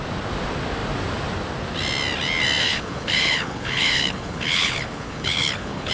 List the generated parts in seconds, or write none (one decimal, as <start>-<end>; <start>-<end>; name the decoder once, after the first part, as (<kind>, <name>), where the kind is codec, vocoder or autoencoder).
2.6-5.9 (codec, HILCodec)